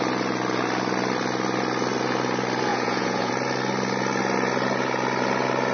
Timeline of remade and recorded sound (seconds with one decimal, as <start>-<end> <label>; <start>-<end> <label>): 0.0-2.7 recorded; 2.7-3.3 remade; 3.3-5.7 recorded